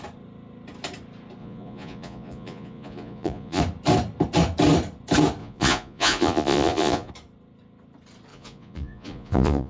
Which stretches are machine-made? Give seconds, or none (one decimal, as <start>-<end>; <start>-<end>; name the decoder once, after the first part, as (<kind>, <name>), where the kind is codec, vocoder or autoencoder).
1.4-3.6 (vocoder, Vocos); 5.4-7.1; 8.3-9.7